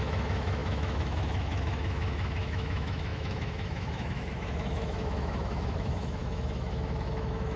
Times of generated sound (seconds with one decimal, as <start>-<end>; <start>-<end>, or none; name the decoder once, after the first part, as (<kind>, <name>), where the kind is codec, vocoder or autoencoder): 0.0-7.6 (autoencoder, DAC-VAE)